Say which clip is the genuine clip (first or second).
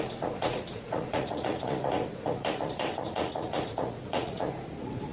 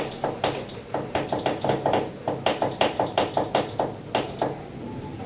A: second